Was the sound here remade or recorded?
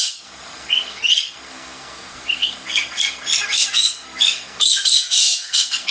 remade